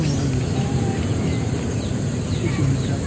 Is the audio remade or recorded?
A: recorded